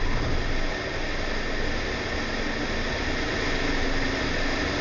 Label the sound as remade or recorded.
recorded